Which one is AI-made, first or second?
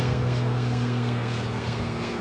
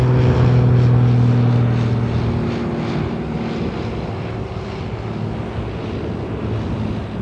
first